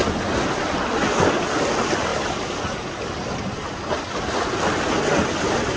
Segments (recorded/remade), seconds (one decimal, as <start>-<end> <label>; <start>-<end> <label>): 0.0-5.8 recorded